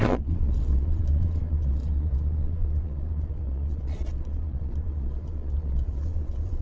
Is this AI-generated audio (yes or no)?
yes